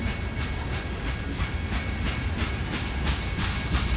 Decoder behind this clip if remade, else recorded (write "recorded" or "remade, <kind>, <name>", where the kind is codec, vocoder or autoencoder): recorded